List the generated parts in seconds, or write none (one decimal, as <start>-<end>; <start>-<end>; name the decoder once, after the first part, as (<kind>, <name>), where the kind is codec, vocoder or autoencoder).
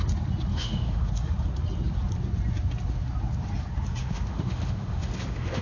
0.5-1.1 (autoencoder, DAC-VAE); 4.0-5.6